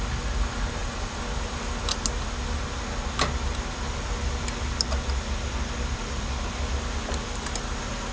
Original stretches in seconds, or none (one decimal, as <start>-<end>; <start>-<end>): 0.0-8.1